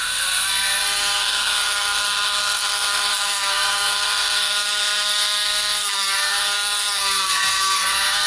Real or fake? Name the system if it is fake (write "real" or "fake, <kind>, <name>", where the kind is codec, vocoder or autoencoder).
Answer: fake, codec, SNAC